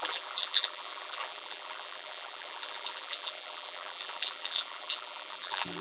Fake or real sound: fake